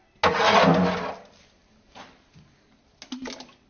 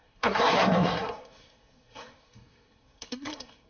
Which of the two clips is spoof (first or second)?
second